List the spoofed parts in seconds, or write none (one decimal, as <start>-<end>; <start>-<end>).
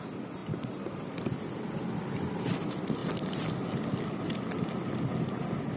none